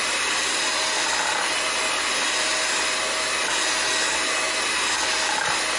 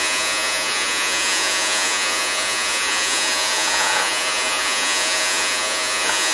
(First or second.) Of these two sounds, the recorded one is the first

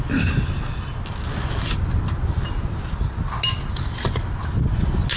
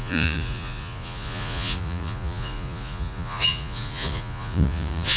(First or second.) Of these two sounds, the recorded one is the first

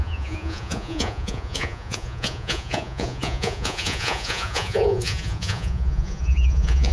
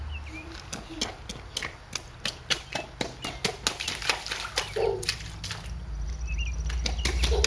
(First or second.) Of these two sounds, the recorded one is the second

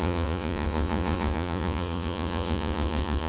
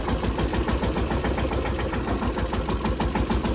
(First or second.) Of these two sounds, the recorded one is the second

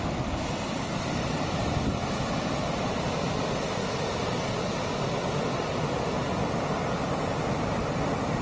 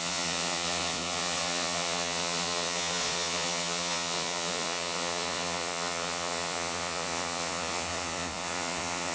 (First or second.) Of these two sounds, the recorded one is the first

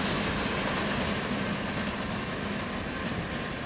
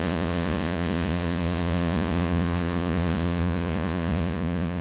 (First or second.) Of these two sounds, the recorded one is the first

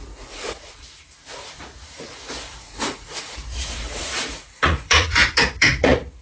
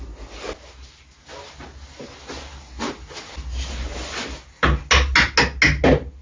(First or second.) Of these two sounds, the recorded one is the second